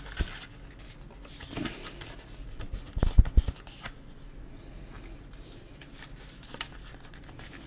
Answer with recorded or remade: recorded